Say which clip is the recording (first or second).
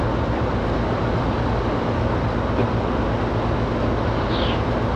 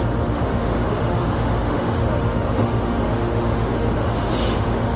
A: first